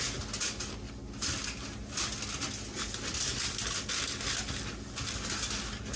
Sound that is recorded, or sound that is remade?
recorded